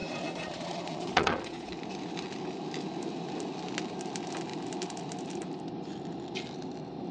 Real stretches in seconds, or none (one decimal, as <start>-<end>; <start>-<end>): 1.7-7.1